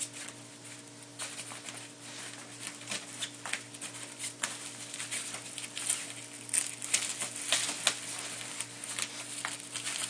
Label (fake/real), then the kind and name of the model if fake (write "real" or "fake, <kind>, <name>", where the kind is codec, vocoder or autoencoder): real